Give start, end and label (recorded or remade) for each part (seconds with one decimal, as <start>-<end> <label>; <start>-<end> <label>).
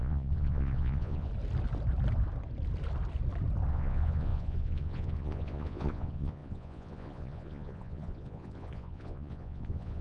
0.0-1.3 remade; 1.3-3.7 recorded; 3.7-10.0 remade